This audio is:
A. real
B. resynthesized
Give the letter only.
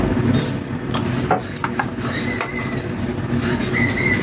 A